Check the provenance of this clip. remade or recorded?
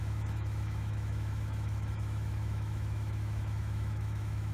remade